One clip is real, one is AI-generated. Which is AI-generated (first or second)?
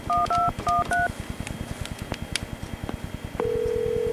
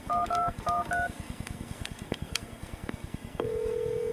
second